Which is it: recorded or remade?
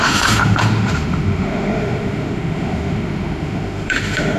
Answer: remade